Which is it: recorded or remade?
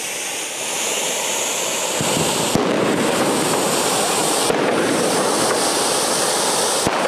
recorded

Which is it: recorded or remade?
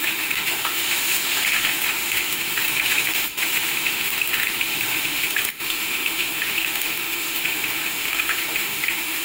remade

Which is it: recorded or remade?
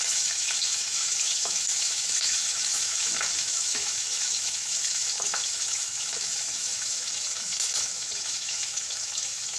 remade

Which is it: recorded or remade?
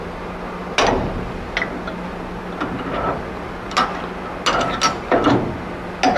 recorded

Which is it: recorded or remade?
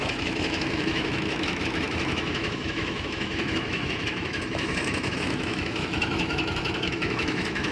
remade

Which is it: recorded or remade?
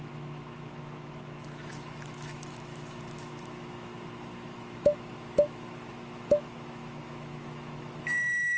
remade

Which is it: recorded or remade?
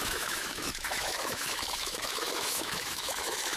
remade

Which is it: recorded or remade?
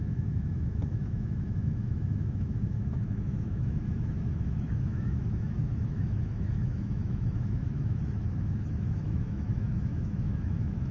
remade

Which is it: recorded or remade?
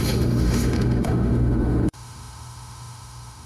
remade